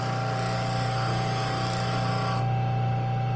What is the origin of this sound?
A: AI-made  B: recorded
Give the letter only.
B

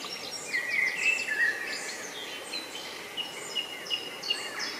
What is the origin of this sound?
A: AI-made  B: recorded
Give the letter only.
B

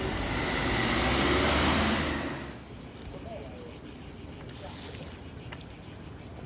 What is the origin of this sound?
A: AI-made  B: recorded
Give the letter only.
B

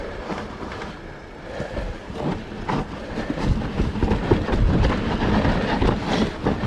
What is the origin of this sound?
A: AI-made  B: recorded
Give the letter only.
B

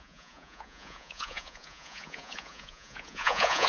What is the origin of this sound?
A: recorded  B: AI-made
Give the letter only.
B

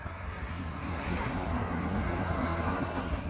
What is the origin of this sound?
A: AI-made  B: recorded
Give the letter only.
A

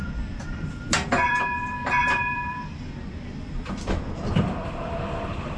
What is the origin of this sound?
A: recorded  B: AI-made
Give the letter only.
B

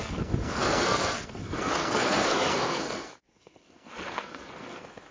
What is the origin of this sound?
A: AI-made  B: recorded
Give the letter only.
A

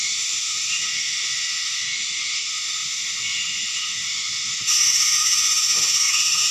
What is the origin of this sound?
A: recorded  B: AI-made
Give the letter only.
B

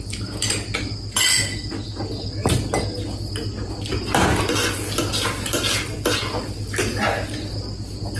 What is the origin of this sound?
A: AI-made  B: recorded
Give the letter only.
B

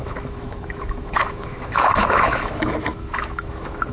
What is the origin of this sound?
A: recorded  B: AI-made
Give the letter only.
B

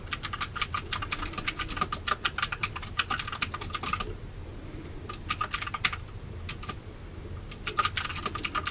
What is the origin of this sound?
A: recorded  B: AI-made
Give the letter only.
A